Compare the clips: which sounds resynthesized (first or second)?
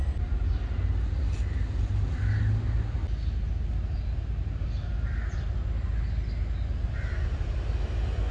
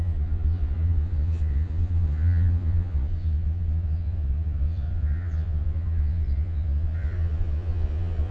second